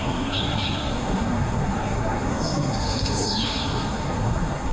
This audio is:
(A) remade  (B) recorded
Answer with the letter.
A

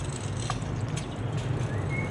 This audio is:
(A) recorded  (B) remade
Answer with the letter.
A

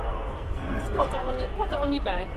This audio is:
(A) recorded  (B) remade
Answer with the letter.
B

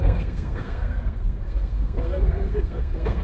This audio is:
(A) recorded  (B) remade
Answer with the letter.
B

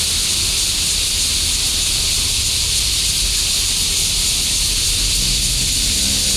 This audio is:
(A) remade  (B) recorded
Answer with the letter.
B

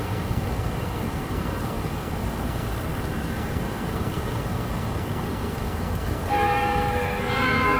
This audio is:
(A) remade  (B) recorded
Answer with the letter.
A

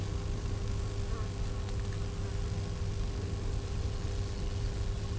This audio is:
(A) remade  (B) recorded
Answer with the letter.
B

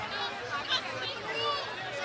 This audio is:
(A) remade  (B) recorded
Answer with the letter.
B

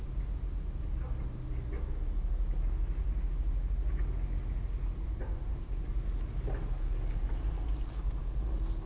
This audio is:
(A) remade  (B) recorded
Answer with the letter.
B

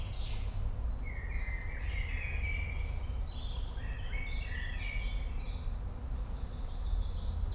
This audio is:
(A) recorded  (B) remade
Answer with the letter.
A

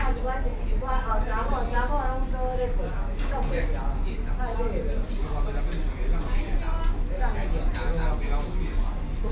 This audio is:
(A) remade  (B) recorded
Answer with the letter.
B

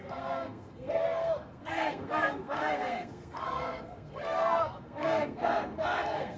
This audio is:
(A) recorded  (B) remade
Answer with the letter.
B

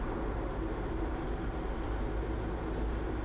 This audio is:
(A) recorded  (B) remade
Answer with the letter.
A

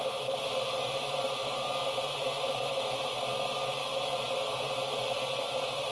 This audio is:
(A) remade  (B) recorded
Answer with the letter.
B